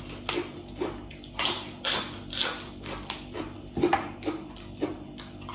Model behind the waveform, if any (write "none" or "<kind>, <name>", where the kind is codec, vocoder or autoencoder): none